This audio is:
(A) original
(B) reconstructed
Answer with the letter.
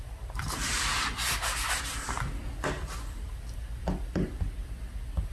A